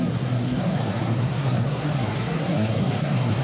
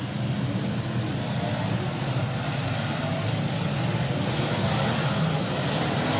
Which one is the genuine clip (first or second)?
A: second